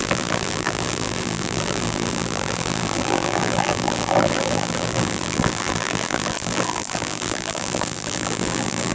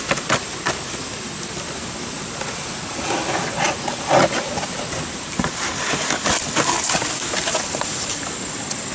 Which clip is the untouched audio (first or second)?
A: second